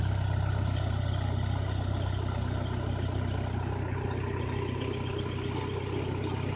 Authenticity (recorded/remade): recorded